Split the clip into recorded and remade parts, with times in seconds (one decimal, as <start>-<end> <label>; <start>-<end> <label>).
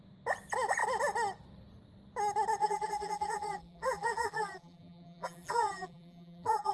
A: 0.0-2.6 recorded; 2.6-6.7 remade